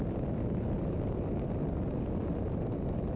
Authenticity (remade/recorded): remade